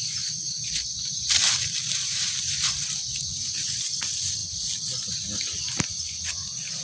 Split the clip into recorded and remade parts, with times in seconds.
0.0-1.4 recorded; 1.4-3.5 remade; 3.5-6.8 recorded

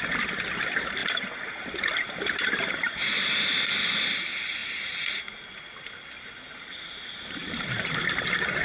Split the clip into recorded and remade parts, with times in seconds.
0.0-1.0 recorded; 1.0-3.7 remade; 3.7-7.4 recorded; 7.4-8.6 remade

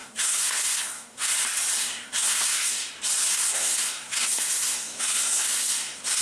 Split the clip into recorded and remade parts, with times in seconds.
0.0-1.3 remade; 1.3-1.8 recorded; 1.8-2.9 remade; 2.9-3.3 recorded; 3.3-6.2 remade